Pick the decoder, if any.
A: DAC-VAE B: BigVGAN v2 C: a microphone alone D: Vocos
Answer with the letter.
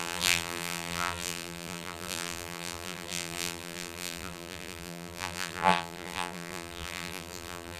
B